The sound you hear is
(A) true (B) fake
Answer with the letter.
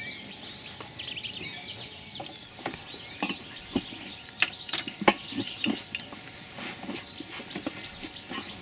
A